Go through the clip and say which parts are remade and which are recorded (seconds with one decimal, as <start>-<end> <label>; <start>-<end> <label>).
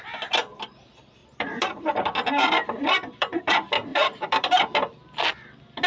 0.0-1.2 recorded; 1.2-3.5 remade; 3.5-3.9 recorded; 3.9-4.6 remade; 4.6-5.9 recorded